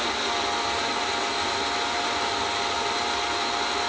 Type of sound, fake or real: real